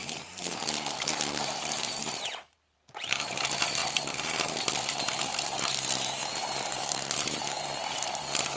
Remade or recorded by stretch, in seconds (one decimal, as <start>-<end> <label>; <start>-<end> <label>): 0.0-3.8 remade; 3.8-5.2 recorded; 5.2-8.6 remade